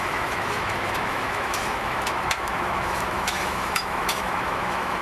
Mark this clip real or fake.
fake